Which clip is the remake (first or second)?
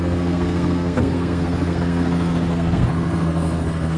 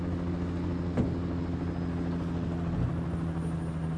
first